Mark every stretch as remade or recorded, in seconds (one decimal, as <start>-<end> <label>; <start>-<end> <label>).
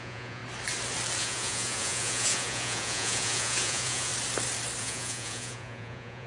0.0-0.4 remade; 0.4-1.2 recorded; 1.2-4.1 remade; 4.1-4.8 recorded; 4.8-6.3 remade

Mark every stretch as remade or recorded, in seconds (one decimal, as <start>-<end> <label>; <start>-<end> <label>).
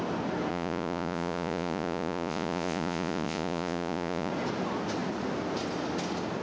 0.0-0.5 recorded; 0.5-4.3 remade; 4.3-6.4 recorded